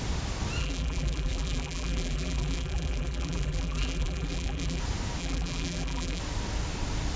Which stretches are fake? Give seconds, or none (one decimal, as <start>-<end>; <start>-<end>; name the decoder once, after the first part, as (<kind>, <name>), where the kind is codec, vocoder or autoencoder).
0.6-4.8 (vocoder, BigVGAN v2); 5.2-6.2